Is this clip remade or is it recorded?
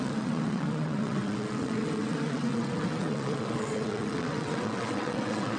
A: remade